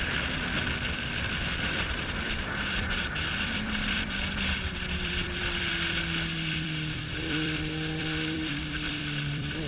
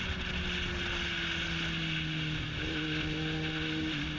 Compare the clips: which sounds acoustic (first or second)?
second